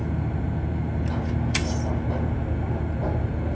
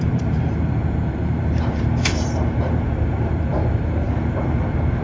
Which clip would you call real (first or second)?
first